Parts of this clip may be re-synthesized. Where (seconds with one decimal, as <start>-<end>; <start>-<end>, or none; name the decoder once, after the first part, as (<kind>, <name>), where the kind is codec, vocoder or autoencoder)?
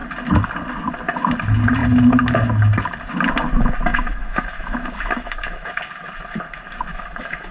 3.9-5.7 (autoencoder, DAC-VAE); 6.9-7.5